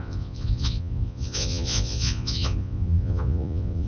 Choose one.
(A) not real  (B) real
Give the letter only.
A